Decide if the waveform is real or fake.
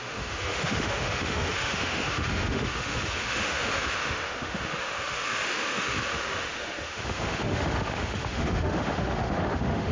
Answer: fake